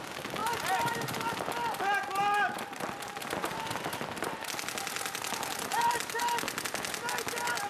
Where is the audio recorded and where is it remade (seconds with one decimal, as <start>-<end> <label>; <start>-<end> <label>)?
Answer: 0.0-0.4 recorded; 0.4-1.3 remade; 1.3-2.2 recorded; 2.2-6.2 remade; 6.2-7.7 recorded